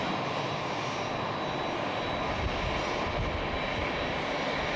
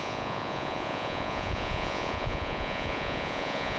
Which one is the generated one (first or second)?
second